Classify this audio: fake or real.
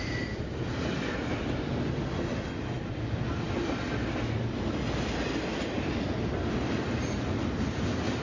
real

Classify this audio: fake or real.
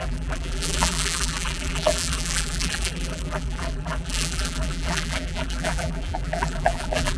fake